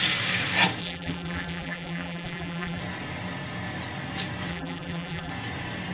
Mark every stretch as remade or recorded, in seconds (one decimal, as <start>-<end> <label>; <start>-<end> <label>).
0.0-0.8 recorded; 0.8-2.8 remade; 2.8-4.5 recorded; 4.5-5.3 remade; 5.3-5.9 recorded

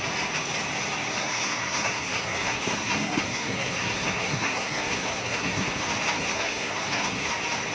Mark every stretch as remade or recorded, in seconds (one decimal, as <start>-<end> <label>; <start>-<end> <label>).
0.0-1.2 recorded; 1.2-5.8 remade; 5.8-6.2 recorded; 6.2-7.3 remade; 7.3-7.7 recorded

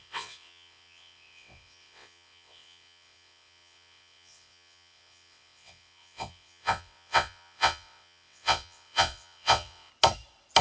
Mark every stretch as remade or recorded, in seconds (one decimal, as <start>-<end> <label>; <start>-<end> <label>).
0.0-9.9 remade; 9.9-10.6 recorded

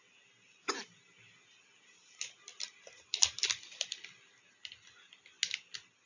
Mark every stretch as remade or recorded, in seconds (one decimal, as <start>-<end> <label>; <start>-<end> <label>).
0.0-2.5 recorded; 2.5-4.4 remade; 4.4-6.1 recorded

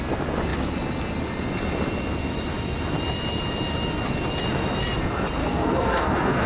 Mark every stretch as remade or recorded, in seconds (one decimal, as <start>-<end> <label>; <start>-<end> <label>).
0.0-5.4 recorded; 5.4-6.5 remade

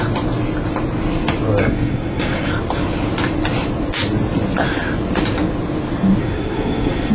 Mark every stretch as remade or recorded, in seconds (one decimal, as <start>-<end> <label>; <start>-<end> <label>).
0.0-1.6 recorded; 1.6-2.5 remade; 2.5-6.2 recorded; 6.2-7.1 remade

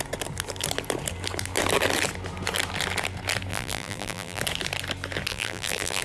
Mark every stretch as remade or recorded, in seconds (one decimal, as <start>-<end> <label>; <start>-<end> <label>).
0.0-3.5 recorded; 3.5-4.4 remade; 4.4-5.3 recorded; 5.3-6.0 remade